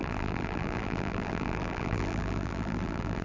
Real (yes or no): no